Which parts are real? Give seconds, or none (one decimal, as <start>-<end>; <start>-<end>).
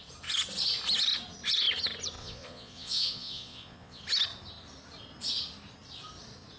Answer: 0.0-2.2; 4.0-6.6